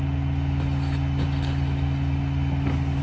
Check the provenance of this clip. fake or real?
real